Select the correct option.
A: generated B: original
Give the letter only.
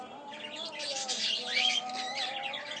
B